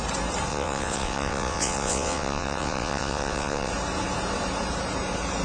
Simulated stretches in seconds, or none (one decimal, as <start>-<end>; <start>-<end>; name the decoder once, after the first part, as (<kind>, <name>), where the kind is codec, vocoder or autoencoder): 0.5-3.7 (vocoder, WaveNeXt)